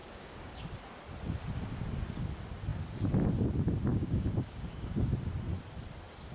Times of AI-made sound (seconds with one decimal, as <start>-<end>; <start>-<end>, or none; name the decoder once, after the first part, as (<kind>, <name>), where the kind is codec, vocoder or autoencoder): 0.0-0.6 (codec, DAC); 3.9-5.0

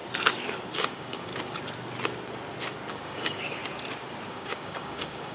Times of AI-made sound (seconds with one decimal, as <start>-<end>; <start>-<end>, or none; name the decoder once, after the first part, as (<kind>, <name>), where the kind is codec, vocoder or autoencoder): 0.7-1.3 (codec, DAC); 2.9-3.6; 4.3-5.3

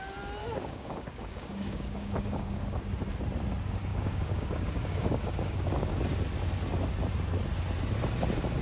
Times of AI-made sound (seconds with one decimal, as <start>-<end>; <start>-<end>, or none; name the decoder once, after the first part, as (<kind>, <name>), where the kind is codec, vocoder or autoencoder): 0.4-2.8 (codec, DAC); 3.9-6.0

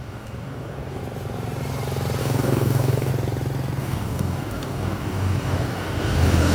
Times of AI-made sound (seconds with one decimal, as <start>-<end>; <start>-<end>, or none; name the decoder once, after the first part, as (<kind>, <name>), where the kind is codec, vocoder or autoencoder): 0.0-1.0 (codec, DAC); 2.2-3.1; 3.8-6.5